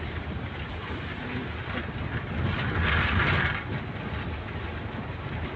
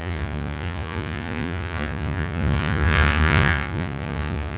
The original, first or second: first